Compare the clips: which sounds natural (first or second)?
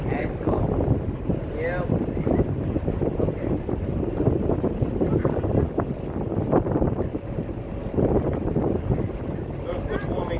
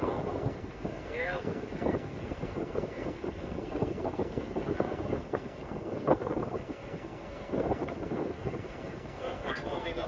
first